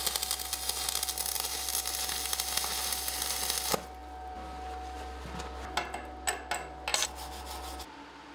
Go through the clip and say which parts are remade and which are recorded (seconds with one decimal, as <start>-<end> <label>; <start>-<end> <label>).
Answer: 0.0-8.3 recorded